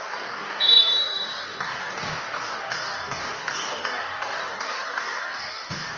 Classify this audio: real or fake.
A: fake